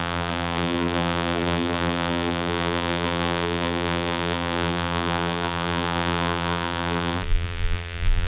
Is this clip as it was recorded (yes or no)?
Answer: no